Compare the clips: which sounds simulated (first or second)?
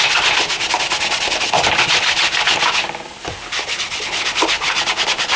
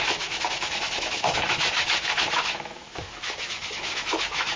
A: second